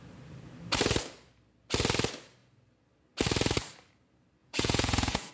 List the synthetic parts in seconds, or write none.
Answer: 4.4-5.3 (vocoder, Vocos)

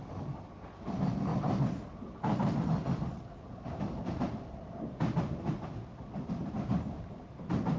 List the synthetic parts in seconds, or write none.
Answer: none

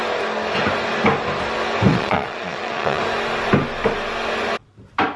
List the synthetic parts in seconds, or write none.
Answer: 1.9-3.0 (vocoder, Vocos)

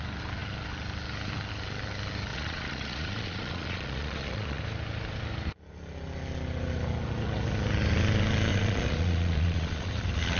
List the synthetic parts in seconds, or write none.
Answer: 2.3-4.6 (vocoder, Vocos); 8.5-9.9